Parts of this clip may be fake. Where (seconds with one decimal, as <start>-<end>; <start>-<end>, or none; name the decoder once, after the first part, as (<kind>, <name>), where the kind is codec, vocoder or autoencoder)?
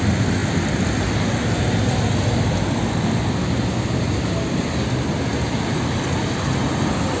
5.7-6.2 (vocoder, BigVGAN v2)